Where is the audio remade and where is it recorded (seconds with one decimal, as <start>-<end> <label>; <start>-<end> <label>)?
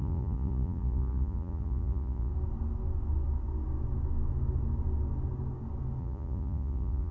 0.0-2.3 remade; 2.3-6.0 recorded; 6.0-7.1 remade